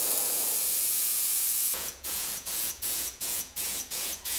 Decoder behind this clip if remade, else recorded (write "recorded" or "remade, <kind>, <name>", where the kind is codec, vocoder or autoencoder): remade, vocoder, Vocos